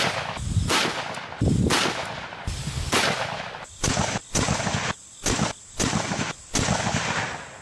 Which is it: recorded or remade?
recorded